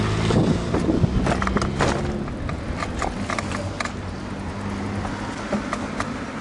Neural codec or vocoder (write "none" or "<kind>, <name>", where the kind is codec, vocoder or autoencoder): none